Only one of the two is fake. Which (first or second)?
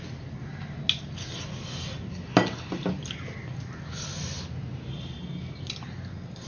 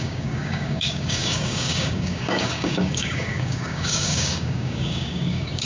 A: second